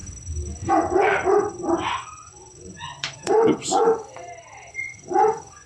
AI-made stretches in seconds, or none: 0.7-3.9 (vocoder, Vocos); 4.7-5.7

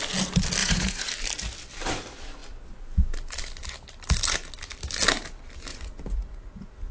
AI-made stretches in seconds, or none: 0.6-1.1 (vocoder, Vocos); 5.7-6.9

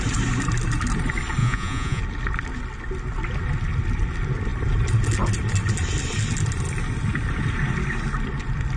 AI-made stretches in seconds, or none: 1.4-2.0 (vocoder, Vocos)

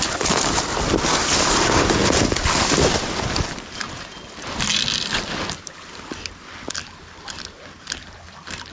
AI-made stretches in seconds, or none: none

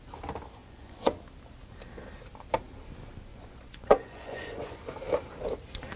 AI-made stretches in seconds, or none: 0.6-1.2 (vocoder, Vocos); 3.3-4.8

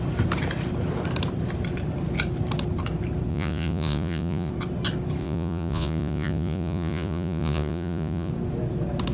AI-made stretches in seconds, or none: 3.3-4.5 (vocoder, Vocos); 5.2-8.3